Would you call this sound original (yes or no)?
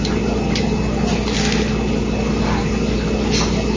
yes